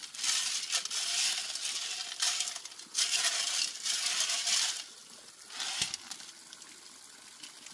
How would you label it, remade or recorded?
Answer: recorded